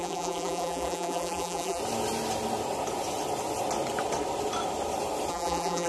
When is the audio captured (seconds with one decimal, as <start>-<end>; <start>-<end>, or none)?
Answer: 1.8-5.3